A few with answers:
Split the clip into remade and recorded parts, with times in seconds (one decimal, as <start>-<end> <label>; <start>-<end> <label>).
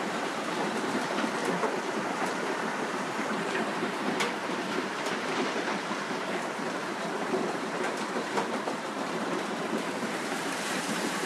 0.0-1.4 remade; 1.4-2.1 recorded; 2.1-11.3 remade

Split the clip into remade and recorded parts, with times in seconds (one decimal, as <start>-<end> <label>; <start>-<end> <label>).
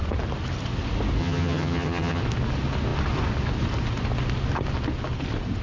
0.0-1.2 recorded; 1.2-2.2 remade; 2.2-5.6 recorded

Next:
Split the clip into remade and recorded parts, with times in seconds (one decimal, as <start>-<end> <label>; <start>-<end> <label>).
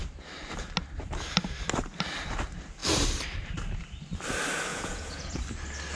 0.0-4.7 recorded; 4.7-5.4 remade; 5.4-6.0 recorded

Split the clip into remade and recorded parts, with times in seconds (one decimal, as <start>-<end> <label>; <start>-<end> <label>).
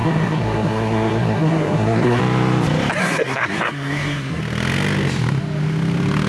0.0-2.2 remade; 2.2-3.0 recorded; 3.0-4.4 remade; 4.4-6.3 recorded